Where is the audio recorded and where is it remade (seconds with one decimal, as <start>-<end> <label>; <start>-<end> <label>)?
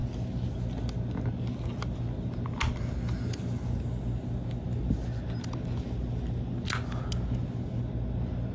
0.0-8.5 recorded